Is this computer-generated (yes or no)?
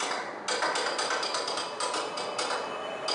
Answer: no